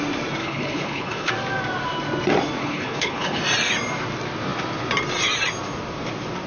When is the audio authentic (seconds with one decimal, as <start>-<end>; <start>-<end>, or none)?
0.0-0.4; 1.3-2.6; 3.4-6.5